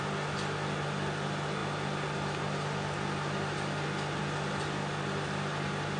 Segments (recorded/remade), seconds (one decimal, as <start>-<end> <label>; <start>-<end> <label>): 0.0-6.0 recorded